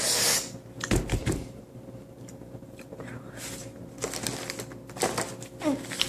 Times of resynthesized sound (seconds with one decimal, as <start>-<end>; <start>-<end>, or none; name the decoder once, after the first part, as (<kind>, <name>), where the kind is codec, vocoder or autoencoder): 1.2-3.9 (vocoder, BigVGAN v2)